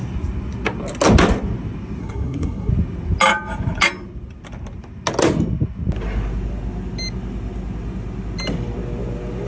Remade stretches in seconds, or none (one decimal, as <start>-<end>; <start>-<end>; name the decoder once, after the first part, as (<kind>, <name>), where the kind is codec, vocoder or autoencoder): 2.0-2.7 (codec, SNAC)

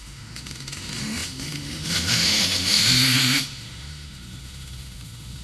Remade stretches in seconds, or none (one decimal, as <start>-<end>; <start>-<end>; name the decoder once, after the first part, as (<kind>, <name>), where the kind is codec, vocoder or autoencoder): 0.0-5.4 (autoencoder, DAC-VAE)

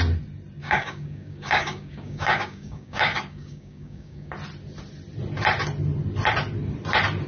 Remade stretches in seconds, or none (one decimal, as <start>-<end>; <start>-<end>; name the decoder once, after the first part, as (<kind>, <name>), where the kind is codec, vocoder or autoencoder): 0.6-4.3 (codec, DAC)

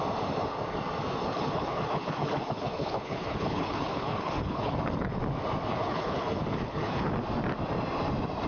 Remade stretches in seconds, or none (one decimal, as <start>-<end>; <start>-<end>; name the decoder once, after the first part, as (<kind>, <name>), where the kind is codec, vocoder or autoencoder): 1.2-5.2 (codec, HILCodec); 5.7-7.1

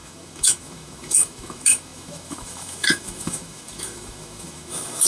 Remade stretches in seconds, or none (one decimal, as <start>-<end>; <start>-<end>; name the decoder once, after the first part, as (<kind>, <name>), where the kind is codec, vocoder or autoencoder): 0.0-5.1 (autoencoder, DAC-VAE)

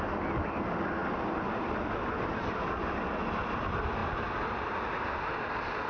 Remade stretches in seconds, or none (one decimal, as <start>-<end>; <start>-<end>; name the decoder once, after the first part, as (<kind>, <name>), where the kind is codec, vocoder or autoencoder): none